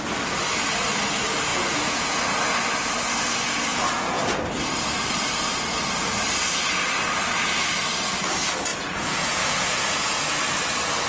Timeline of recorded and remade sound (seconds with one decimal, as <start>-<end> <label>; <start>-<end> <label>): 0.0-1.5 recorded; 1.5-2.2 remade; 2.2-3.7 recorded; 3.7-4.2 remade; 4.2-8.7 recorded; 8.7-10.4 remade; 10.4-11.1 recorded